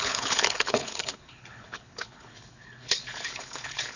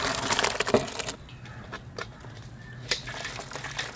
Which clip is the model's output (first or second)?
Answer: first